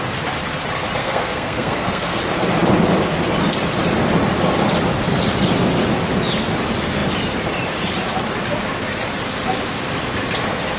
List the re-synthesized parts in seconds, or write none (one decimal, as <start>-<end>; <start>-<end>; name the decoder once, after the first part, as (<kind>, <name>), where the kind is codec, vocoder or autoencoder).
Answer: 1.0-2.2 (codec, SNAC)